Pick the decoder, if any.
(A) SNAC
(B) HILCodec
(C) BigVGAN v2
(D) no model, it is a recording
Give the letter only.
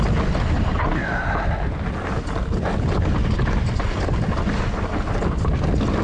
D